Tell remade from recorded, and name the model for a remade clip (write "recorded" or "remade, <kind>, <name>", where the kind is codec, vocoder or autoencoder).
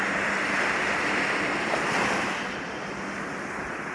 recorded